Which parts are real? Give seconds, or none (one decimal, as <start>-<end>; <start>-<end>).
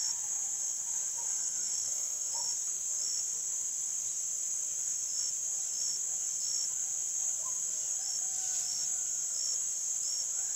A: 0.0-1.4; 2.3-10.6